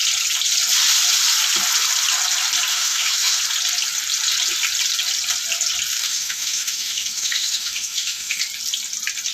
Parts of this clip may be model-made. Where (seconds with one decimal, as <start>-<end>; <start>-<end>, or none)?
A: 2.7-3.4; 5.9-8.4